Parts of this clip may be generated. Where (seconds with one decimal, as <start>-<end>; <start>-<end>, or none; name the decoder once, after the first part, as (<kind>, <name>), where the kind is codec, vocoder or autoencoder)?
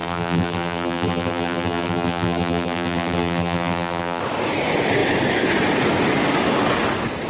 0.0-4.2 (vocoder, BigVGAN v2)